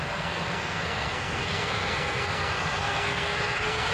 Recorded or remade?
remade